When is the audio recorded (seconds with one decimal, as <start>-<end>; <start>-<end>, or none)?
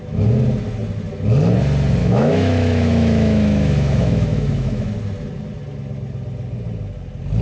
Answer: 0.0-2.0; 4.9-7.4